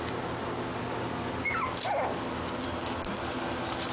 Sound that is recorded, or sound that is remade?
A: recorded